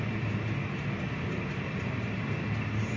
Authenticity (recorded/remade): recorded